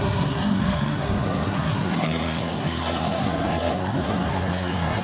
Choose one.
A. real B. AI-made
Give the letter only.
B